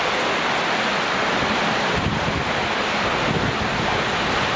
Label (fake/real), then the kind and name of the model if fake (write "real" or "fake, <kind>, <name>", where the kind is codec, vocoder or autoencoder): real